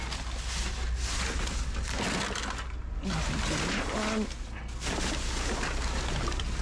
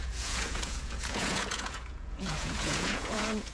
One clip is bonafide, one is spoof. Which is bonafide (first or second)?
first